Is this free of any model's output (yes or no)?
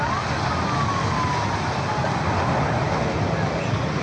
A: yes